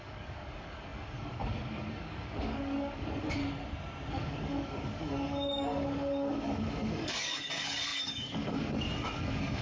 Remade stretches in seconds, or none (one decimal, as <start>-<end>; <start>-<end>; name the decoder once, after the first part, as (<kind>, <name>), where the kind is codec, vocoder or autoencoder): 0.0-3.4 (codec, DAC); 4.1-9.6